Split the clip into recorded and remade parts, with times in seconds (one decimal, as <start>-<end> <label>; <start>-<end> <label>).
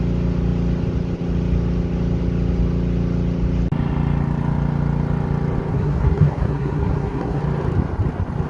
0.0-5.7 recorded; 5.7-7.4 remade; 7.4-8.5 recorded